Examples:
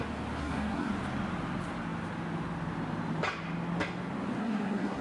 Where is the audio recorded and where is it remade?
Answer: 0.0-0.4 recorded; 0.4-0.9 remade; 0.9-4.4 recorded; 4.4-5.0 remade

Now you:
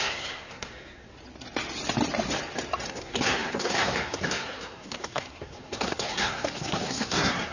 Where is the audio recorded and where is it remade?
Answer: 0.0-1.1 remade; 1.1-2.9 recorded; 2.9-7.5 remade